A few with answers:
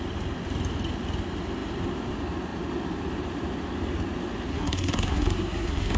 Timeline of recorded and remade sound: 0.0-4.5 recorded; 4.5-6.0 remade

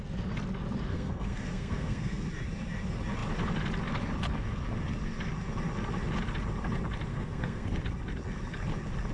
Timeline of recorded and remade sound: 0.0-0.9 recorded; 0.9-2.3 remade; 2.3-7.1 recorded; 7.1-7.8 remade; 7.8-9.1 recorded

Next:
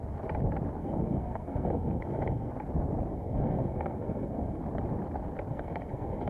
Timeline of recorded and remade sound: 0.0-0.8 recorded; 0.8-2.5 remade; 2.5-3.1 recorded; 3.1-4.6 remade; 4.6-5.5 recorded; 5.5-6.3 remade

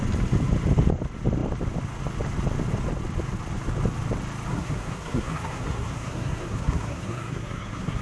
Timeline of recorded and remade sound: 0.0-4.5 recorded; 4.5-8.0 remade